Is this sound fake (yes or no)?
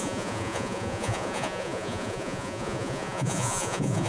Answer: yes